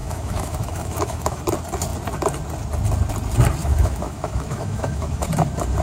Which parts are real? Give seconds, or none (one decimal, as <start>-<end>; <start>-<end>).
1.4-3.6; 5.3-5.8